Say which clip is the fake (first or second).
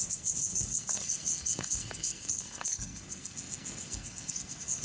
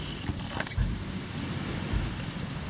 first